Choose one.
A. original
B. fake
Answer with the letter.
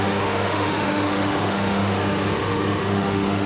B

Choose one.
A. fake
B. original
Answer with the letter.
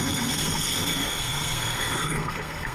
A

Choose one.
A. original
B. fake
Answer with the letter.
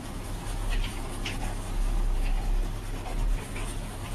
B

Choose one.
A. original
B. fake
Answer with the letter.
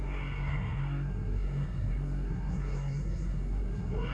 B